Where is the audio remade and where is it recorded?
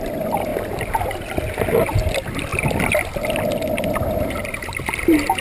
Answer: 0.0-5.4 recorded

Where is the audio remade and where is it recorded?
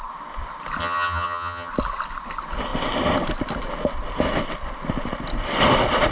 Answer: 0.0-0.8 recorded; 0.8-1.7 remade; 1.7-6.1 recorded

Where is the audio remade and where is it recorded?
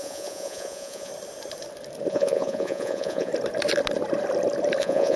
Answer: 0.0-1.1 remade; 1.1-2.1 recorded; 2.1-3.3 remade; 3.3-4.8 recorded; 4.8-5.2 remade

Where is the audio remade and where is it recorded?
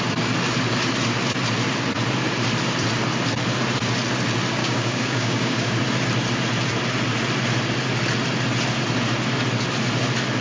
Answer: 0.0-4.6 recorded; 4.6-5.8 remade; 5.8-10.4 recorded